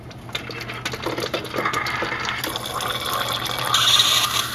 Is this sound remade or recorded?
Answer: recorded